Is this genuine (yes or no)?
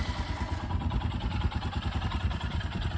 yes